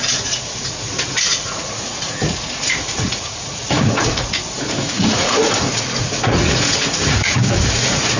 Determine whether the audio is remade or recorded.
remade